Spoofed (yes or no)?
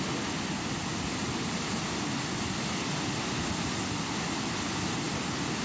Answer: no